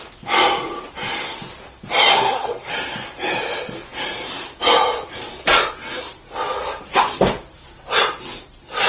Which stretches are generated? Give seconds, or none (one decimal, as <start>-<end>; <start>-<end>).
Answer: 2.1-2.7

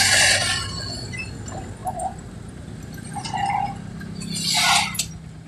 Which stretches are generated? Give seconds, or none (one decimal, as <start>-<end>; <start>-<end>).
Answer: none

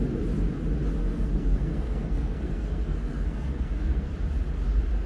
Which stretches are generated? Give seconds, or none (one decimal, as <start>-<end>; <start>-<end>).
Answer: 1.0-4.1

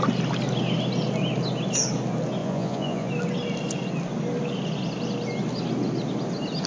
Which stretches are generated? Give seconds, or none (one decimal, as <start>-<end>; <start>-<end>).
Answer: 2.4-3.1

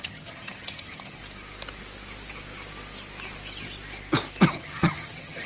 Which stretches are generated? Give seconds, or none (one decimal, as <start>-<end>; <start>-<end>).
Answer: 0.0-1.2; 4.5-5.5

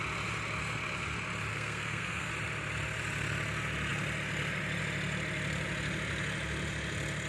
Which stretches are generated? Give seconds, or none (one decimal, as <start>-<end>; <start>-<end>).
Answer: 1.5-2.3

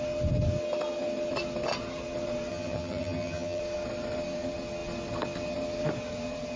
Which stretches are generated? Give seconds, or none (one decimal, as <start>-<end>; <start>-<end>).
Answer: 2.5-3.6

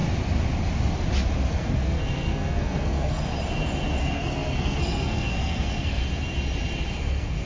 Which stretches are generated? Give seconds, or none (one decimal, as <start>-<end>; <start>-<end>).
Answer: 1.5-3.2; 4.0-6.0; 7.0-7.5